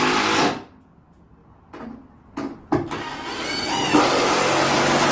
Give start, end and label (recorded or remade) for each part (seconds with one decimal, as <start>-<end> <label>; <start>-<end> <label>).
0.0-5.1 recorded